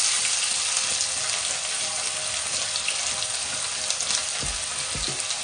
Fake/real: real